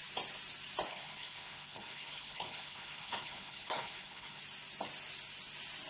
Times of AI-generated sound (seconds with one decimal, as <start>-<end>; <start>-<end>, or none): 0.9-4.4